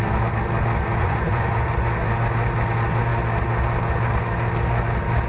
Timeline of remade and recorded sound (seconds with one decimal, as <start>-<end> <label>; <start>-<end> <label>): 0.0-1.0 recorded; 1.0-1.7 remade; 1.7-5.3 recorded